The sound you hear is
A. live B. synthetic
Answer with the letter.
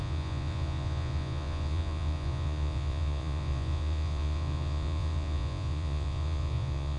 B